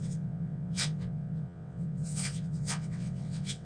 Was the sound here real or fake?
fake